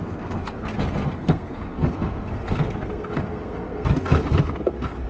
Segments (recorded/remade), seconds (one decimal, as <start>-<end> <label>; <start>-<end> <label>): 0.0-5.1 remade